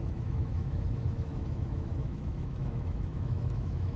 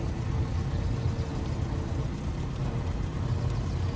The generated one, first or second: first